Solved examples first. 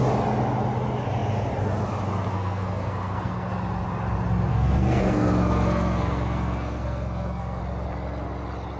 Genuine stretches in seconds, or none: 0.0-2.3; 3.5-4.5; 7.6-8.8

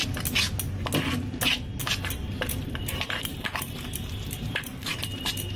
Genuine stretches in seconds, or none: 0.0-1.8

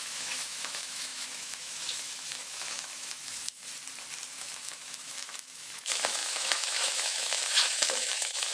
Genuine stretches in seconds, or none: 3.7-4.3

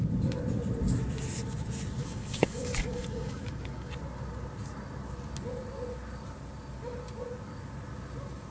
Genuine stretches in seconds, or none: 0.0-2.0; 3.9-8.5

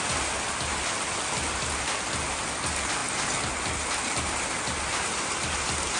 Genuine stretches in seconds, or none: 0.0-6.0